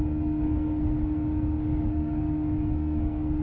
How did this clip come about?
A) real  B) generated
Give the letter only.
B